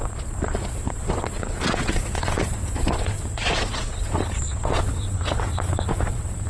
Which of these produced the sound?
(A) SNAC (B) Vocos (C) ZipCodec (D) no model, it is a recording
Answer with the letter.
B